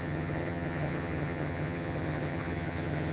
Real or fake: fake